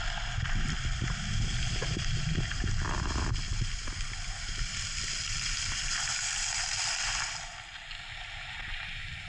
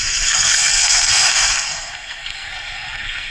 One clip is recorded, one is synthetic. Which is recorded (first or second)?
first